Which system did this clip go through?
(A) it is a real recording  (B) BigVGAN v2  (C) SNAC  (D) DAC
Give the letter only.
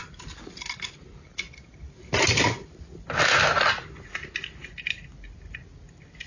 A